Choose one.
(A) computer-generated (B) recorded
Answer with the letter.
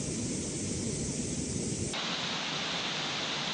B